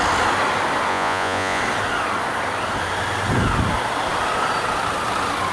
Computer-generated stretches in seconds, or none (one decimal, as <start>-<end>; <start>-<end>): 0.9-1.6